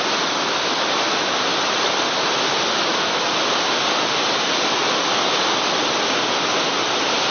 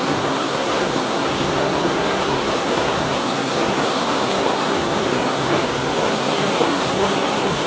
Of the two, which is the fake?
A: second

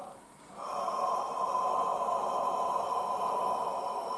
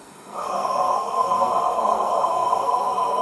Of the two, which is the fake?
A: second